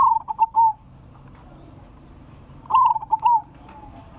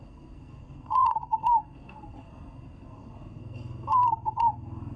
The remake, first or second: second